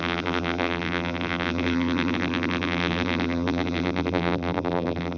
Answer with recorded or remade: remade